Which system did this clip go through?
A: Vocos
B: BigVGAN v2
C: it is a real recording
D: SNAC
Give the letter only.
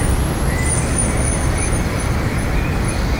C